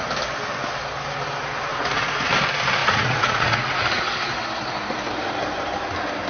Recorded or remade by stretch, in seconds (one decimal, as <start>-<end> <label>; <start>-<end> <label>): 0.0-1.7 recorded; 1.7-2.3 remade; 2.3-2.8 recorded; 2.8-4.0 remade; 4.0-6.3 recorded